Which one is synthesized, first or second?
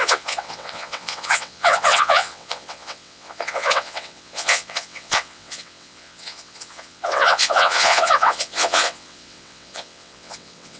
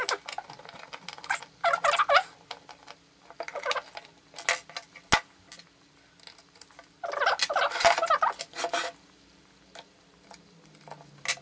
first